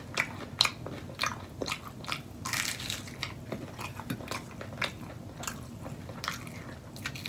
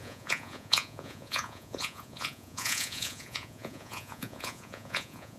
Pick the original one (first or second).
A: first